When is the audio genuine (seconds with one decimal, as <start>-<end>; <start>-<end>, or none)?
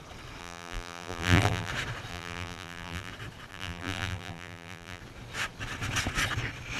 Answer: 0.0-0.4; 1.7-2.1; 3.1-3.5; 5.0-6.8